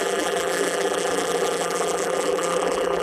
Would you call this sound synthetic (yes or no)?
yes